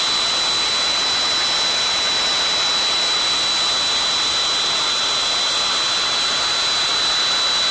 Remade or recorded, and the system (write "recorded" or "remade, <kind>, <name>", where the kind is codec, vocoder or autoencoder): recorded